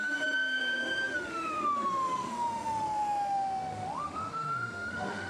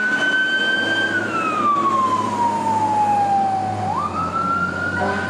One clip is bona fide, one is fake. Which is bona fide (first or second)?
second